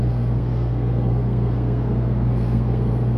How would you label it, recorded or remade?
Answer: remade